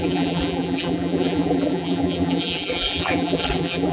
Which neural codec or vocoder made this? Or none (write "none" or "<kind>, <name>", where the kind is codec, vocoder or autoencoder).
vocoder, BigVGAN v2